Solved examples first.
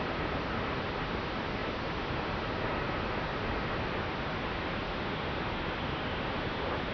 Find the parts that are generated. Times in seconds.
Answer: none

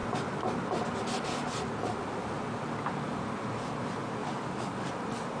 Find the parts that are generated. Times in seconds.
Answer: 4.2-4.9

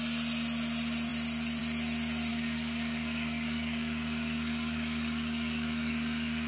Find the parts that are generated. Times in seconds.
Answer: 2.3-6.5

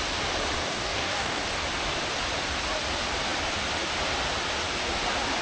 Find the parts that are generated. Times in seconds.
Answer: 0.6-1.4